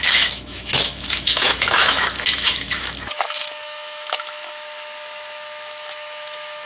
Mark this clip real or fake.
fake